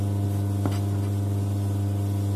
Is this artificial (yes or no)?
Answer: no